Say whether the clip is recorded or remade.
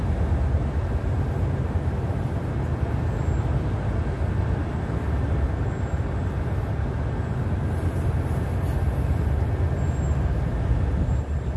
recorded